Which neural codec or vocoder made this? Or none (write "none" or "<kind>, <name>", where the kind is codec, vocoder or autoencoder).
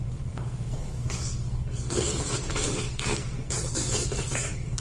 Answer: codec, SNAC